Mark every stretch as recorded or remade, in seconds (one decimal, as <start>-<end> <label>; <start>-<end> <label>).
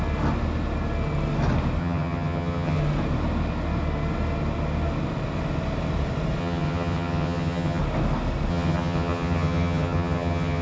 0.0-1.8 recorded; 1.8-2.8 remade; 2.8-6.4 recorded; 6.4-7.8 remade; 7.8-8.5 recorded; 8.5-10.6 remade